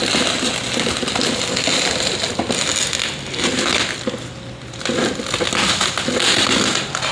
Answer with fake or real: real